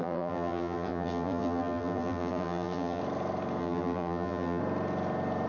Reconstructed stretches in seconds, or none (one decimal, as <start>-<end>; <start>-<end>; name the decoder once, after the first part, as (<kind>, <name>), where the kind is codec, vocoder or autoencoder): 0.0-3.0 (vocoder, BigVGAN v2); 3.6-4.6